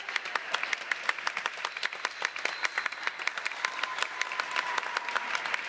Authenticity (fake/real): real